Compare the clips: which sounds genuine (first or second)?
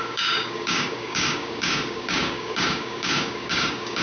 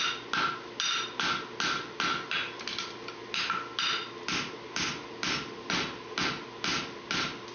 second